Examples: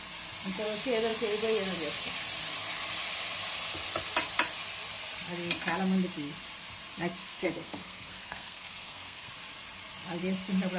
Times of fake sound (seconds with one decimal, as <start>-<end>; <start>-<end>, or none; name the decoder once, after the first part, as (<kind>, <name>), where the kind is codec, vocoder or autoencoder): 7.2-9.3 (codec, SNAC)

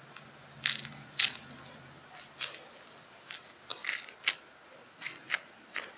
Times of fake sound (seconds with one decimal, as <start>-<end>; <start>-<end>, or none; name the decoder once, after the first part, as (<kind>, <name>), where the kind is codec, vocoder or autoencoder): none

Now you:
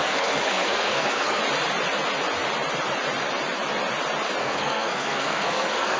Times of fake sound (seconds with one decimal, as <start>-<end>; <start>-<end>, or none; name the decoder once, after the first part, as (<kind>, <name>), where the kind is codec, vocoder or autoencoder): 0.0-1.4 (codec, SNAC); 4.4-6.0

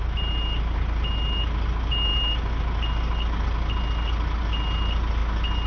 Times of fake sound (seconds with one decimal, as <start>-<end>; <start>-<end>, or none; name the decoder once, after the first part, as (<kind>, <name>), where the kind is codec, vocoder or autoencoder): none